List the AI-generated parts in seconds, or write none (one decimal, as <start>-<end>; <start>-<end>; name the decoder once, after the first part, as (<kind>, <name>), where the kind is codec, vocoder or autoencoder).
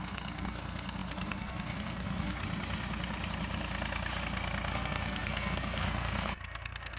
0.0-2.4 (codec, SNAC); 4.7-7.0